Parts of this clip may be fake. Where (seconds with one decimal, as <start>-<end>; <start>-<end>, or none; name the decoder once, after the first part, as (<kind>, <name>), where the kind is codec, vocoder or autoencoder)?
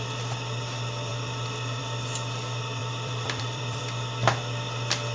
2.8-3.8 (vocoder, BigVGAN v2)